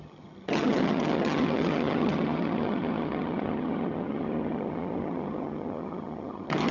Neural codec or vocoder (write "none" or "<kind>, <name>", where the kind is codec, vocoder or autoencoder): vocoder, HiFi-GAN